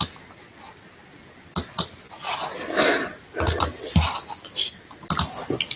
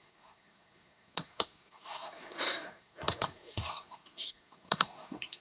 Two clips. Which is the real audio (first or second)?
first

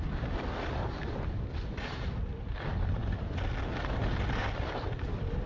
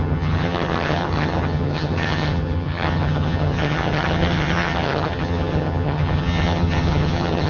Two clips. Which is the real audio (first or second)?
first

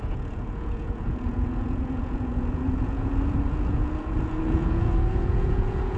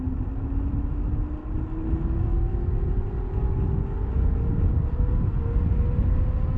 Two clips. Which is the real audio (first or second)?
second